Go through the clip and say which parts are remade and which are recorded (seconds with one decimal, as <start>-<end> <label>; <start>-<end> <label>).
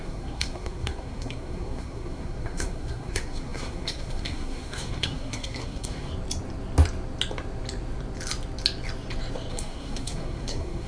0.0-6.1 remade; 6.1-9.5 recorded; 9.5-10.9 remade